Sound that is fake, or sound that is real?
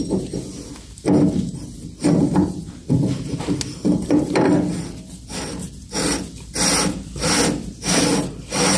real